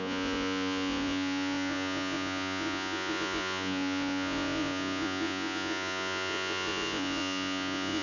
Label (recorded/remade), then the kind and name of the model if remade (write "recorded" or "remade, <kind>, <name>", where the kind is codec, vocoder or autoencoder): remade, vocoder, Vocos